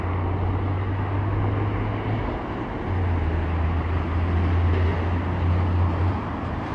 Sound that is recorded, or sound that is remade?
recorded